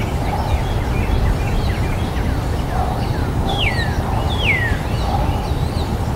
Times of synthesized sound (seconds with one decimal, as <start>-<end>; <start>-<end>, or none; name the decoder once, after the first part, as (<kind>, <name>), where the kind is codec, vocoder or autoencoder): 3.2-3.7 (codec, DAC)